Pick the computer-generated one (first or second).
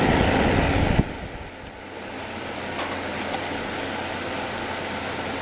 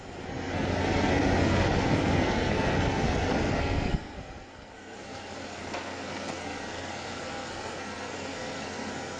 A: second